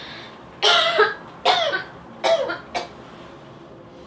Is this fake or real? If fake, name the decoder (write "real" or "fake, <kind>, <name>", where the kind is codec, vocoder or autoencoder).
real